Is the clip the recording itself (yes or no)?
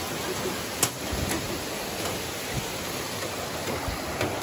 yes